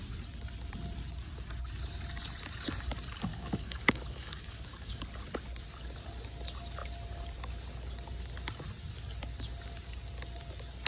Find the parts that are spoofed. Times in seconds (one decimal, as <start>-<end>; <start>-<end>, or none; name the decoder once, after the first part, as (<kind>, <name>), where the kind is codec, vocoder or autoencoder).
3.3-5.0 (codec, DAC)